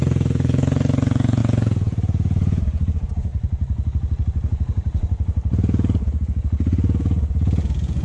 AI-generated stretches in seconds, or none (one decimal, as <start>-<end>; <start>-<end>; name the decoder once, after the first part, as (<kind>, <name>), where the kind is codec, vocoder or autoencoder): 0.0-3.3 (vocoder, Vocos); 5.5-8.0